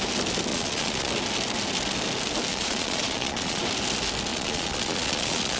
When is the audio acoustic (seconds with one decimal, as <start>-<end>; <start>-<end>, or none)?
0.0-0.5; 1.1-2.5; 3.6-4.3